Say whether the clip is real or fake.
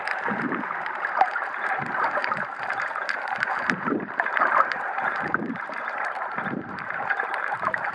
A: fake